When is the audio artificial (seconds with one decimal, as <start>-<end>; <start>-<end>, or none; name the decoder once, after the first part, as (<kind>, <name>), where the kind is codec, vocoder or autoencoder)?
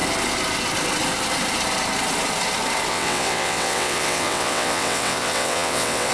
2.9-6.1 (vocoder, WaveNeXt)